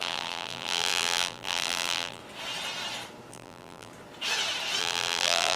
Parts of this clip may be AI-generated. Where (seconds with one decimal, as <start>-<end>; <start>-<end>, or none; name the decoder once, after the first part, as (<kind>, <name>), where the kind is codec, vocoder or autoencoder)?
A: 0.0-2.2 (vocoder, BigVGAN v2); 3.3-3.9; 4.8-5.6